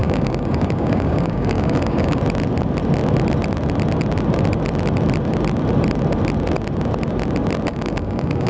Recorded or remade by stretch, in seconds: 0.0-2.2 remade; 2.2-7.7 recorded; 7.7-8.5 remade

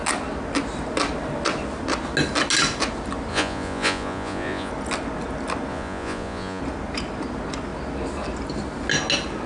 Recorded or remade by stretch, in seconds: 0.0-3.3 recorded; 3.3-4.7 remade; 4.7-5.7 recorded; 5.7-6.6 remade; 6.6-9.5 recorded

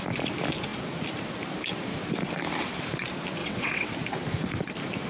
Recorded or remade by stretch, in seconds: 0.0-3.4 recorded; 3.4-3.9 remade; 3.9-5.1 recorded